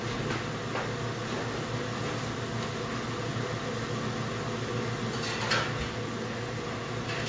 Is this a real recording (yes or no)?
yes